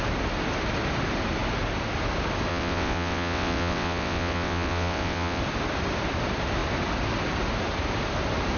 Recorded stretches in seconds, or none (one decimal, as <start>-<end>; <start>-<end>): 0.0-2.5; 5.4-8.6